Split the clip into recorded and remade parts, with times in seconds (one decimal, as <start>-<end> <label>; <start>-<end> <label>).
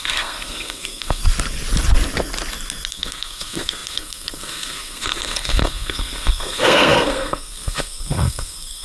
0.0-1.2 remade; 1.2-2.9 recorded; 2.9-8.8 remade